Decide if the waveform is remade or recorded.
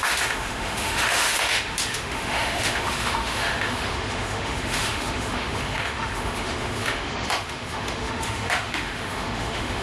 remade